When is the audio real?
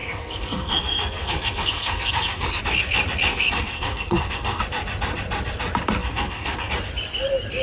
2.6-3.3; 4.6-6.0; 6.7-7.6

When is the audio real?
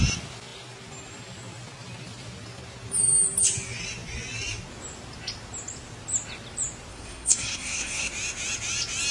0.0-6.9; 8.1-9.1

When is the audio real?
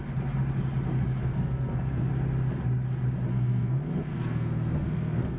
0.0-1.2; 2.1-3.3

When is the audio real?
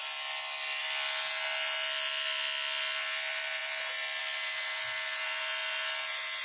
0.0-6.4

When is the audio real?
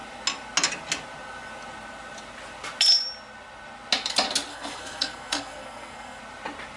0.0-4.5; 6.2-6.8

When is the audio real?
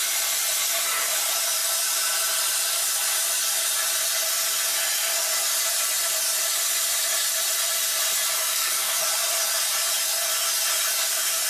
0.0-8.5; 9.0-11.5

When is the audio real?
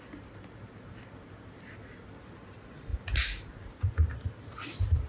0.0-5.1